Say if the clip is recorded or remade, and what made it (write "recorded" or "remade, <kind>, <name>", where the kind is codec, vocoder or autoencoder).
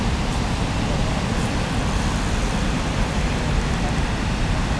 recorded